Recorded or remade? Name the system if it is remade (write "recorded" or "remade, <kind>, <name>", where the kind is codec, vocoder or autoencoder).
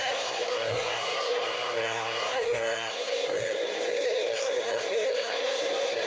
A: remade, codec, SNAC